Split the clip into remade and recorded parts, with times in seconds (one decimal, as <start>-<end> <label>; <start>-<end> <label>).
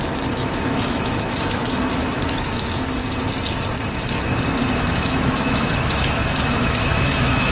0.0-3.0 remade; 3.0-4.7 recorded; 4.7-7.5 remade